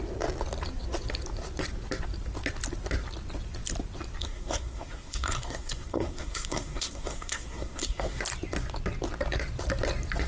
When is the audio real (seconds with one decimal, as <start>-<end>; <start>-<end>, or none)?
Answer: 0.0-4.2; 8.2-10.3